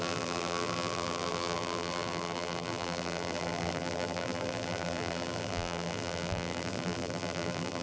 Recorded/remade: remade